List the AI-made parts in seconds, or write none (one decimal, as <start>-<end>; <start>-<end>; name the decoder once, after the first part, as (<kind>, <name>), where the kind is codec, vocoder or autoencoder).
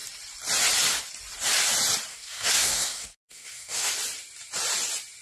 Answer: 2.1-3.9 (codec, SNAC)